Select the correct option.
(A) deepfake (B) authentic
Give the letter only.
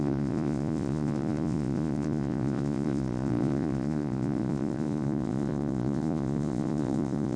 A